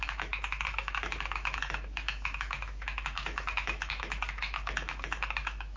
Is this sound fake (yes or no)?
yes